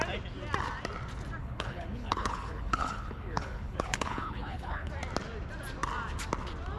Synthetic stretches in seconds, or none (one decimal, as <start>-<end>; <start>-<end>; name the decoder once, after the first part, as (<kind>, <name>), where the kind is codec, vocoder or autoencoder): 1.4-4.9 (codec, HILCodec)